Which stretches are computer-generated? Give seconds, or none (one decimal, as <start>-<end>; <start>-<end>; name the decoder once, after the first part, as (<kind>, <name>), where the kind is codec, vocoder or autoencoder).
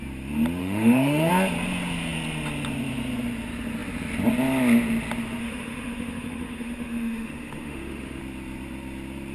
0.6-1.3 (autoencoder, DAC-VAE); 5.4-8.2